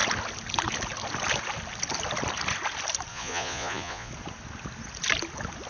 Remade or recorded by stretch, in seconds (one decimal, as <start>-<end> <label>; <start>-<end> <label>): 0.0-3.1 recorded; 3.1-4.1 remade; 4.1-5.7 recorded